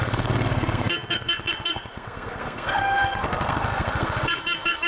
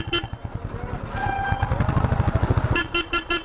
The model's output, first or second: first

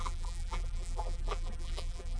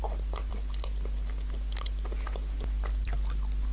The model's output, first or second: first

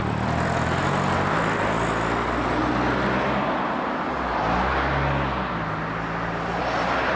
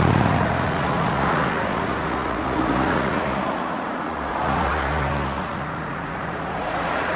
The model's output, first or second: second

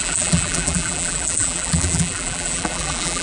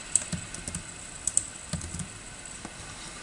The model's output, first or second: first